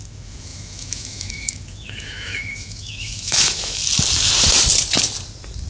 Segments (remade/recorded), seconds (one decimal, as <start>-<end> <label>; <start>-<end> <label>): 0.0-3.8 remade; 3.8-5.7 recorded

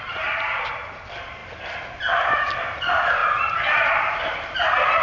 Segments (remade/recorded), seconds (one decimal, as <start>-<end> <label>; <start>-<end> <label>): 0.0-5.0 recorded

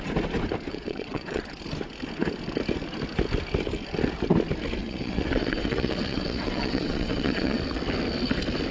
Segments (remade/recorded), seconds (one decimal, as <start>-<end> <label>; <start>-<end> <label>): 0.0-0.7 recorded; 0.7-1.4 remade; 1.4-4.8 recorded; 4.8-7.6 remade; 7.6-8.7 recorded

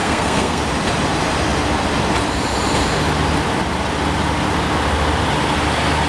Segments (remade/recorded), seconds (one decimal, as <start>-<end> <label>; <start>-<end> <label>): 0.0-0.6 remade; 0.6-6.1 recorded

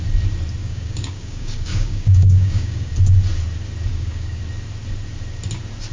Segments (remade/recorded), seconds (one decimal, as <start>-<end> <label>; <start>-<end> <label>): 0.0-0.6 recorded; 0.6-2.9 remade; 2.9-3.9 recorded; 3.9-4.4 remade; 4.4-5.9 recorded

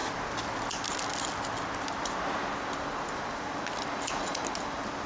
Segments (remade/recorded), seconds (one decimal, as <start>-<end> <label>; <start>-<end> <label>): 0.0-5.1 recorded

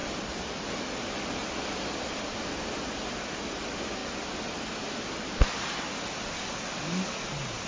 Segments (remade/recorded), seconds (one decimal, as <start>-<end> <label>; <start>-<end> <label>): 0.0-4.0 remade; 4.0-6.5 recorded; 6.5-7.7 remade

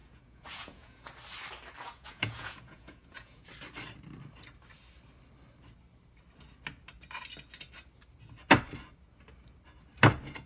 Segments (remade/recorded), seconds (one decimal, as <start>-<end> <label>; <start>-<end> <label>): 0.0-1.1 remade; 1.1-1.8 recorded; 1.8-3.5 remade; 3.5-10.5 recorded